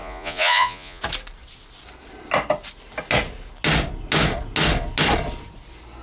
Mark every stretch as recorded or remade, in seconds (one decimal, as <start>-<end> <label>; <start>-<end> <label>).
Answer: 0.0-1.0 remade; 1.0-6.0 recorded